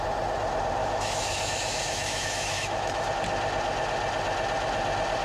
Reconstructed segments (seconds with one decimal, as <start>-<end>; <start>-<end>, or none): 0.8-3.1